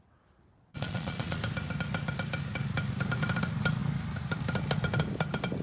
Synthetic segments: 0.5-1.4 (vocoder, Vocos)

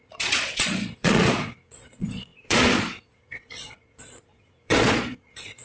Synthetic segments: 0.0-5.6 (vocoder, Vocos)

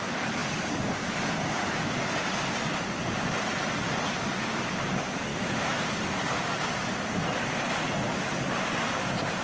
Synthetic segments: 5.3-5.8 (autoencoder, DAC-VAE)